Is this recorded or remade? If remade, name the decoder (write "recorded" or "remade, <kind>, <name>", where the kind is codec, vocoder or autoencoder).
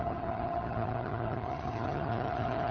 remade, vocoder, HiFi-GAN